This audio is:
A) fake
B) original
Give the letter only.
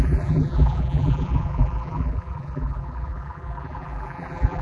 A